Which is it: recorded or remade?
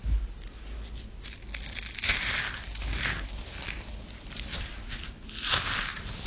recorded